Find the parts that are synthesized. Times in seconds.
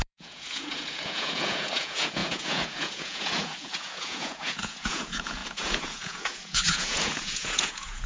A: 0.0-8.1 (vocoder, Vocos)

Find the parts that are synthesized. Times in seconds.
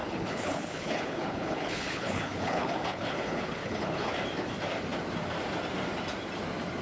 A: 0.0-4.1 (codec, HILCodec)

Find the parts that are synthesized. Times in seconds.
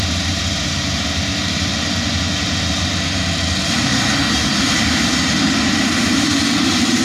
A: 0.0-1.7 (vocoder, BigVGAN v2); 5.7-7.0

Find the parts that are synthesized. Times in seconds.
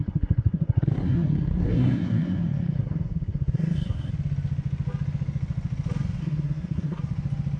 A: 0.0-4.1 (codec, SNAC); 6.2-7.0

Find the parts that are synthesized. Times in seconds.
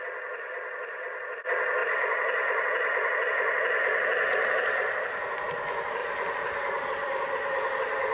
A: 1.8-3.3 (vocoder, BigVGAN v2); 6.0-7.3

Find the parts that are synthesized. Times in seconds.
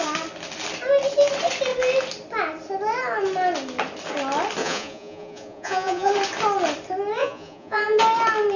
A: 4.6-6.1 (vocoder, Vocos); 7.2-8.0